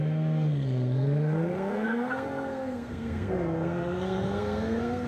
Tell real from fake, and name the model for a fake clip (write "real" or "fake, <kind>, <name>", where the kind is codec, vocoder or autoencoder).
fake, codec, SNAC